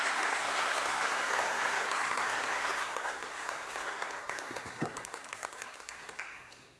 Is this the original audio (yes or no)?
no